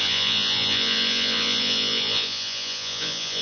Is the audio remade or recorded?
remade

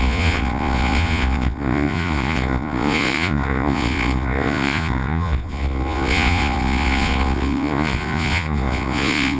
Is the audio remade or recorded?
remade